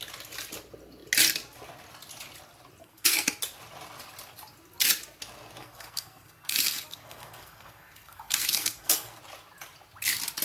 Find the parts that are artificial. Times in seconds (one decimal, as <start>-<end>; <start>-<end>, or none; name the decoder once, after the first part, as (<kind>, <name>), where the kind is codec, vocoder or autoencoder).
2.8-3.3 (codec, SNAC); 5.6-9.2